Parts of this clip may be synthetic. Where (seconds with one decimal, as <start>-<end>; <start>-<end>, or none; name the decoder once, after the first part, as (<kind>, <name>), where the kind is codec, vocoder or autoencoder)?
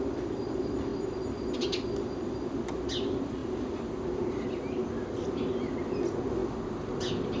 none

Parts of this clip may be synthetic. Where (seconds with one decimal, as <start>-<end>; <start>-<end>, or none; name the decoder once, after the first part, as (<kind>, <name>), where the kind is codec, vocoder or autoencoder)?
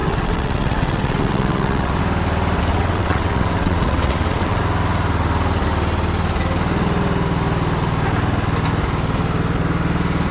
0.0-2.0 (vocoder, WaveNeXt); 2.7-4.6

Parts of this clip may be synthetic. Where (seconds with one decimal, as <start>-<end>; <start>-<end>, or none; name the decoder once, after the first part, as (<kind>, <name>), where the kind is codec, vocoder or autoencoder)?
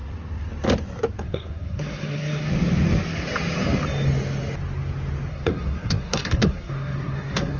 1.2-2.5 (codec, SNAC); 5.3-7.6